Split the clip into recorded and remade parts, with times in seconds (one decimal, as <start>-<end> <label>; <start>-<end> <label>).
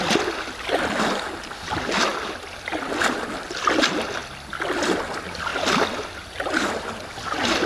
0.0-7.7 recorded